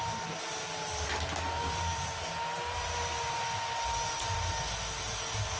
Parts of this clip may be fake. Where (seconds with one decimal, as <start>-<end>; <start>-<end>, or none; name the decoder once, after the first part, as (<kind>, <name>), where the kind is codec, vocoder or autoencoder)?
none